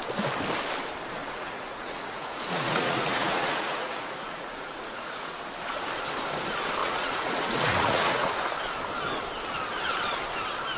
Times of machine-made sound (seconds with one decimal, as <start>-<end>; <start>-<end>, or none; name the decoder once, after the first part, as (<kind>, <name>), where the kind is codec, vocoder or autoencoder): 1.2-5.4 (vocoder, Vocos); 6.8-8.3